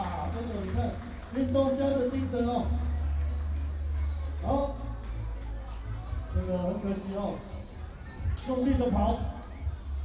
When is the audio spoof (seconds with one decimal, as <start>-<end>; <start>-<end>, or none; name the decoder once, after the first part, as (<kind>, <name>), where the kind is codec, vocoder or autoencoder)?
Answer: 8.6-9.4 (vocoder, Vocos)